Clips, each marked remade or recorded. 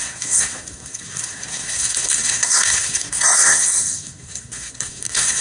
remade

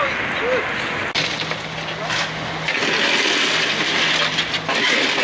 recorded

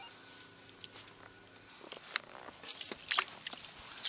recorded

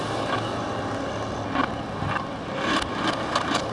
recorded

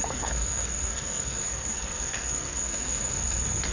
remade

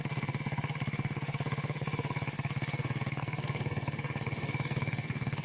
remade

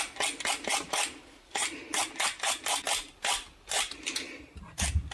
recorded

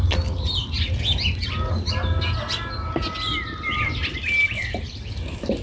recorded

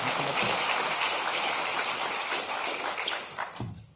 recorded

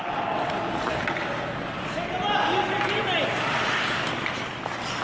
recorded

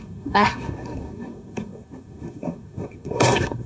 remade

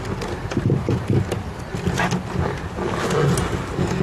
recorded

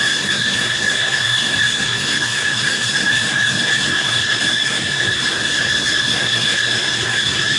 remade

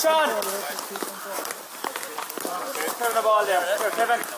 recorded